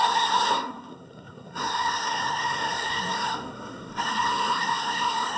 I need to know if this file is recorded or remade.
remade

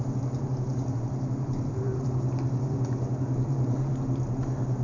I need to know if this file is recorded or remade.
remade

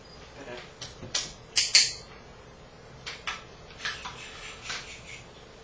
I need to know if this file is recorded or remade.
recorded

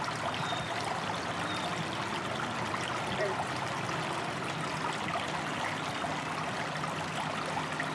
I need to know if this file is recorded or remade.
recorded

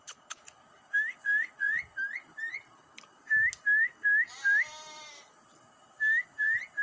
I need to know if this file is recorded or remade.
recorded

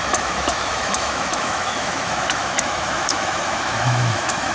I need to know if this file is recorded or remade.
remade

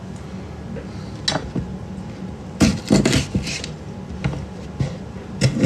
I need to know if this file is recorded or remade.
recorded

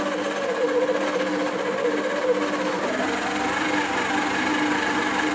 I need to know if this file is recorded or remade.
recorded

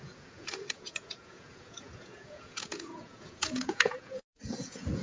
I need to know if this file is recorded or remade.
remade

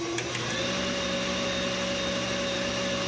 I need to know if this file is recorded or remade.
recorded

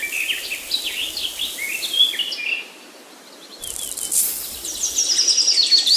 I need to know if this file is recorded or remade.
recorded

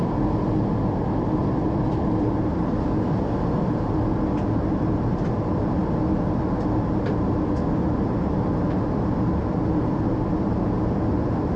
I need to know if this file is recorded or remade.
recorded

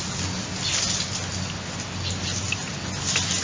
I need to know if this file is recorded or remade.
recorded